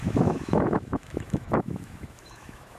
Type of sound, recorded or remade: remade